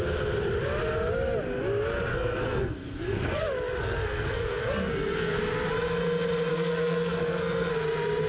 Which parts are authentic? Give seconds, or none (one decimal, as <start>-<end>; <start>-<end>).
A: 0.0-2.1; 3.4-3.8; 5.4-6.5; 7.7-8.3